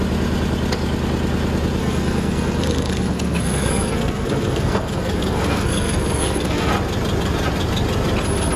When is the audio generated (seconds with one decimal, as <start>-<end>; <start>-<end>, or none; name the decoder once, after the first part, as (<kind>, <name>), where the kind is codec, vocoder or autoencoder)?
1.8-6.7 (codec, SNAC)